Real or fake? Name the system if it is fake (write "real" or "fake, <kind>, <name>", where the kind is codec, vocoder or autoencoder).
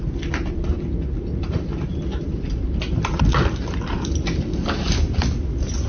real